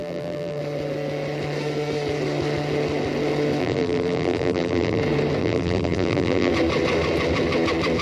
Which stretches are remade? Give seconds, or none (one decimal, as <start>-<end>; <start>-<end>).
0.0-0.6; 3.6-5.0; 5.4-6.5